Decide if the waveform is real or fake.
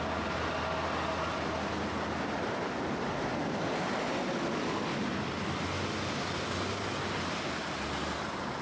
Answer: real